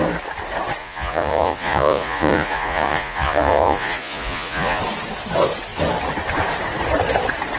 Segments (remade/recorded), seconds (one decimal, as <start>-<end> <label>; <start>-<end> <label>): 0.0-0.8 recorded; 0.8-4.8 remade; 4.8-7.6 recorded